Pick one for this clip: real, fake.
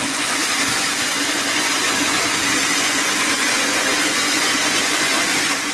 fake